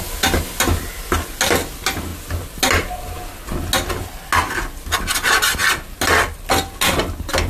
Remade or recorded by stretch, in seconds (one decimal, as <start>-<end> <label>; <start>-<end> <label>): 0.0-7.5 recorded